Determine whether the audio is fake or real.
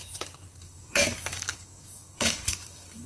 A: fake